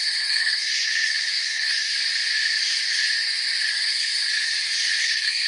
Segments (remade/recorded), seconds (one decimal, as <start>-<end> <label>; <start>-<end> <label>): 0.0-2.0 remade; 2.0-3.7 recorded; 3.7-4.3 remade; 4.3-5.0 recorded; 5.0-5.5 remade